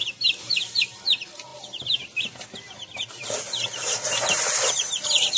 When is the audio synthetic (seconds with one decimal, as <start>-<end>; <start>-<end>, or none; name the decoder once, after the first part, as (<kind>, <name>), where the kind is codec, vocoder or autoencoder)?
none